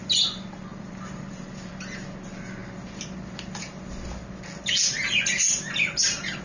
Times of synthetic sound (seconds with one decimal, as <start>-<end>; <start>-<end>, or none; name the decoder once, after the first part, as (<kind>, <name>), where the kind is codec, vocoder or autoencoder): 0.7-1.7 (vocoder, BigVGAN v2)